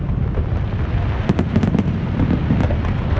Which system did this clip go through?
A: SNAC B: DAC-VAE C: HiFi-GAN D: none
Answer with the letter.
D